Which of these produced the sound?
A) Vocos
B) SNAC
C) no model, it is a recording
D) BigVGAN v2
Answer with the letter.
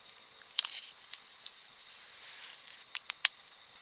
C